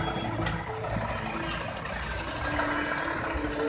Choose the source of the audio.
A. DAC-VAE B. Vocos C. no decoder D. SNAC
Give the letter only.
C